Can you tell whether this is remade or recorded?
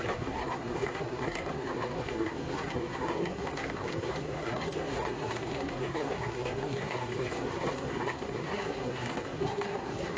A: remade